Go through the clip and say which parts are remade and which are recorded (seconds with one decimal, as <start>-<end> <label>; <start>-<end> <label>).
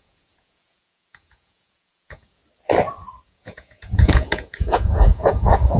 0.0-2.4 remade; 2.4-3.2 recorded; 3.2-5.8 remade